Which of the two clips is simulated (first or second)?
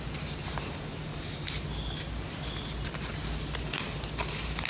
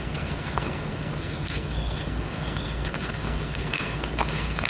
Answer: second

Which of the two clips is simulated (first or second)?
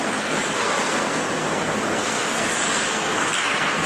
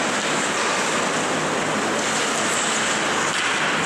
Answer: first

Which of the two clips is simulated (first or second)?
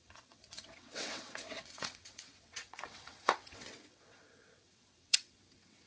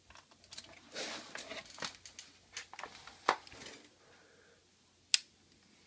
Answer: first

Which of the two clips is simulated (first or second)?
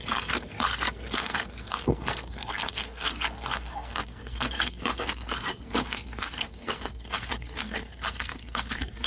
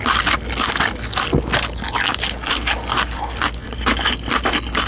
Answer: first